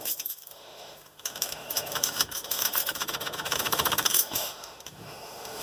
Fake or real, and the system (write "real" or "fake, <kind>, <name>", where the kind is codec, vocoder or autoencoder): fake, autoencoder, DAC-VAE